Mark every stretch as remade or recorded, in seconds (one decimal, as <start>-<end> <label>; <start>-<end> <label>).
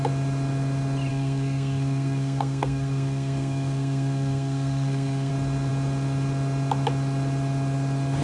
0.0-1.1 recorded; 1.1-5.3 remade; 5.3-8.2 recorded